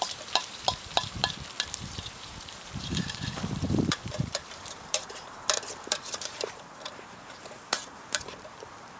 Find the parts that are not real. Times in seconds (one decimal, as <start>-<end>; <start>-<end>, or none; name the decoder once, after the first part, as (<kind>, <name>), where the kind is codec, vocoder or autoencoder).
0.0-1.2 (vocoder, BigVGAN v2); 1.7-9.0